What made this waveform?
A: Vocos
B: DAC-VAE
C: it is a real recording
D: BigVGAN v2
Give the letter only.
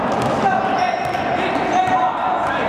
C